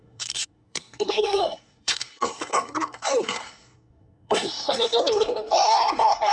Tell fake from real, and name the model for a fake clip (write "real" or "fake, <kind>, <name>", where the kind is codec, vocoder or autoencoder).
fake, codec, SNAC